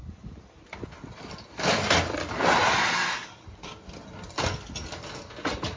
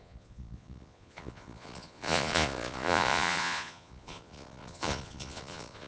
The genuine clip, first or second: first